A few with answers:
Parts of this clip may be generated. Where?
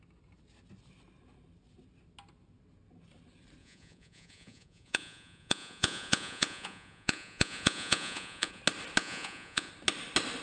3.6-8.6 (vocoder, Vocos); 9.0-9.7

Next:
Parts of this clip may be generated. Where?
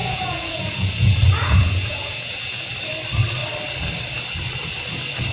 0.0-2.7 (vocoder, Vocos)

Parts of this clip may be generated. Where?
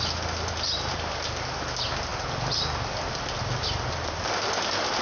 none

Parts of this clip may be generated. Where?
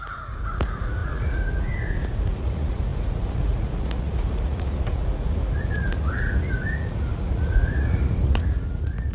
0.0-9.1 (vocoder, Vocos)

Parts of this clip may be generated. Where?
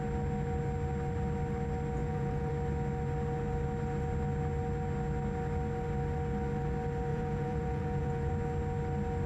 2.0-2.5 (vocoder, Vocos); 7.1-8.3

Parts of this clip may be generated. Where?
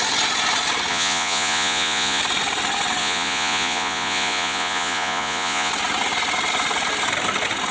0.9-2.2 (vocoder, Vocos); 3.0-5.7